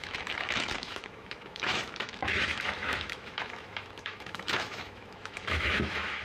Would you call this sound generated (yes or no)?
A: yes